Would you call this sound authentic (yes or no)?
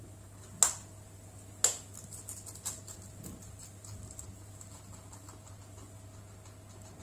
yes